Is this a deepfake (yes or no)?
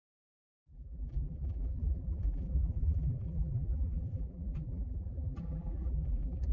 yes